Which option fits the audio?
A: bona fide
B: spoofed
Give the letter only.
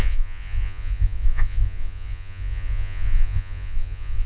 B